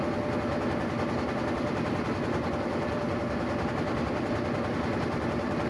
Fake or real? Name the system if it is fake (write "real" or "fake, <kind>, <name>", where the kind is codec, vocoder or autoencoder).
real